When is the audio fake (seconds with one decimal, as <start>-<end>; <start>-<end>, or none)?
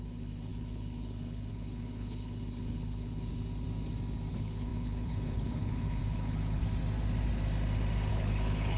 0.0-3.3; 4.3-6.6; 8.1-8.8